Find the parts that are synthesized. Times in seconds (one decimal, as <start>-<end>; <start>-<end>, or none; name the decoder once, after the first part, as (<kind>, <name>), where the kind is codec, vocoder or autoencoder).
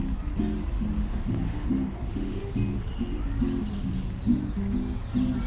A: 1.0-2.4 (autoencoder, DAC-VAE)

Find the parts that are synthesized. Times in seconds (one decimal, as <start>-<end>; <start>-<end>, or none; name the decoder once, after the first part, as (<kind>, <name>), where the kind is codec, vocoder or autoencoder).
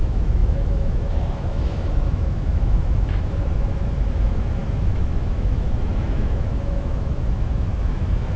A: 0.0-8.4 (autoencoder, DAC-VAE)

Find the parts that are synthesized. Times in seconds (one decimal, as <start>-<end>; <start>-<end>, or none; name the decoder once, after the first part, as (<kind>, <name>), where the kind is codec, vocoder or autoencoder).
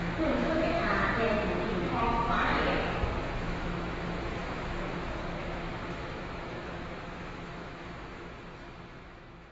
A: 0.0-0.8 (autoencoder, DAC-VAE); 3.2-9.5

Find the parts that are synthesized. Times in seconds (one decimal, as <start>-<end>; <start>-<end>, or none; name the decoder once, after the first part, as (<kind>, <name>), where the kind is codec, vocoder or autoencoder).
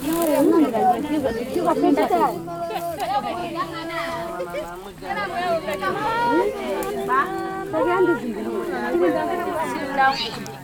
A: 3.4-4.4 (autoencoder, DAC-VAE); 5.9-7.1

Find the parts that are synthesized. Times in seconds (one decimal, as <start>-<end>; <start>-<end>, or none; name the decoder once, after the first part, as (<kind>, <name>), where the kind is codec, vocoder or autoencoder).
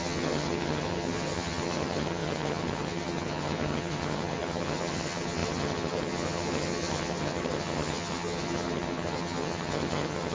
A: 0.0-10.3 (vocoder, HiFi-GAN)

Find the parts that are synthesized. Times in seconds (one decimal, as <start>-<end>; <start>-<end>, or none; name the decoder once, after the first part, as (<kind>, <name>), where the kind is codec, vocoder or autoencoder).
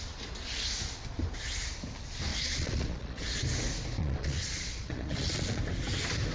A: 2.3-3.4 (vocoder, Vocos); 4.0-5.6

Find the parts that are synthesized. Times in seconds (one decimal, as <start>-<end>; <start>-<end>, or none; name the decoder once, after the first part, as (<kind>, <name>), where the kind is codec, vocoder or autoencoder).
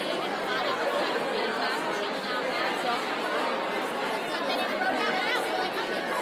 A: none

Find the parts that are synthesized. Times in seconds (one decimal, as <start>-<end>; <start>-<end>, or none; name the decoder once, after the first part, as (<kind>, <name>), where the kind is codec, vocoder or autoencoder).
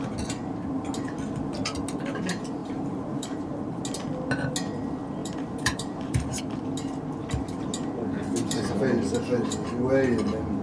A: 2.6-3.8 (vocoder, BigVGAN v2); 5.2-6.4